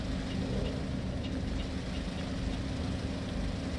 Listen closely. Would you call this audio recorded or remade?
recorded